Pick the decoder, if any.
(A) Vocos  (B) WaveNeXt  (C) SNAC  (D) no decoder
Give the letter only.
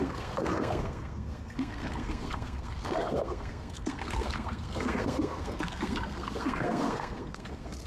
C